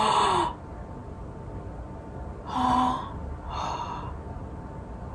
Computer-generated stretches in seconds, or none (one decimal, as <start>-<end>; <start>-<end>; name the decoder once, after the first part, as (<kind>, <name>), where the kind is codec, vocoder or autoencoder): none